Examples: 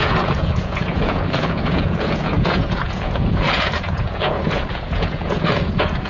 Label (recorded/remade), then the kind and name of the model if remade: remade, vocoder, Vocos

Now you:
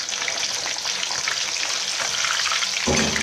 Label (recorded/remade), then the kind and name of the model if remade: recorded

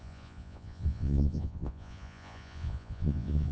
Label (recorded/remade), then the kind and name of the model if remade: remade, vocoder, Vocos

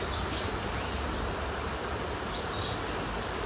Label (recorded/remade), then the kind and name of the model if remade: recorded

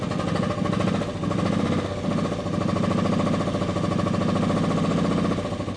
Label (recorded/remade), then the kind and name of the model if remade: recorded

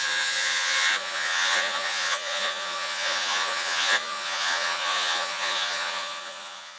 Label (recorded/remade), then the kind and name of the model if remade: remade, vocoder, Vocos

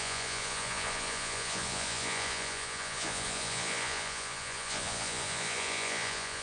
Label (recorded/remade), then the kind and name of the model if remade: remade, vocoder, Vocos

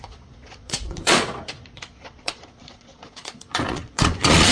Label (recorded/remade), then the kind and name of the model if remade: remade, vocoder, Vocos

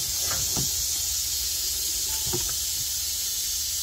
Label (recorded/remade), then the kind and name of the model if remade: remade, vocoder, Vocos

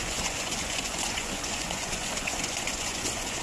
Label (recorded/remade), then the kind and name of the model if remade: remade, vocoder, Vocos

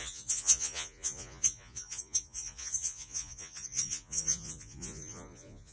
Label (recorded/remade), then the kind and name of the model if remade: remade, vocoder, Vocos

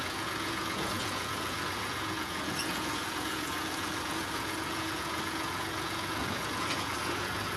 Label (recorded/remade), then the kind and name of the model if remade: remade, vocoder, Vocos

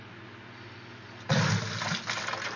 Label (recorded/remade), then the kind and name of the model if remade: recorded